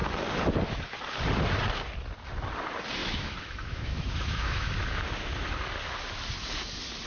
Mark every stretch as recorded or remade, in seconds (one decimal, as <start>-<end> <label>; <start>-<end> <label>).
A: 0.0-3.0 recorded; 3.0-4.7 remade; 4.7-7.1 recorded